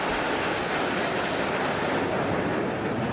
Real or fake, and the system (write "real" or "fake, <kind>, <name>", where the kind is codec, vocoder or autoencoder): fake, vocoder, BigVGAN v2